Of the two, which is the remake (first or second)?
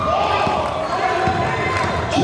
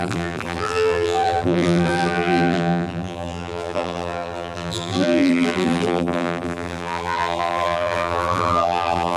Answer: second